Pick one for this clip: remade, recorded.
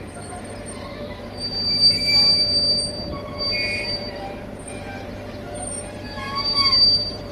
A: remade